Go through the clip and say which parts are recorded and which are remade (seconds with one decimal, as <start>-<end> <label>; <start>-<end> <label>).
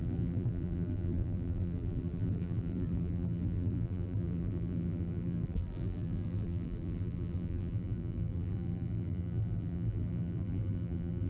0.0-11.3 remade